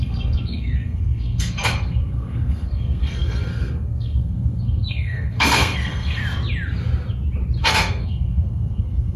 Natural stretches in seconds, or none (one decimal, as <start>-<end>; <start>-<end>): 6.2-7.6